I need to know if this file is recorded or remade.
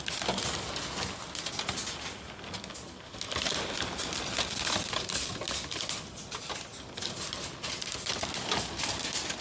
recorded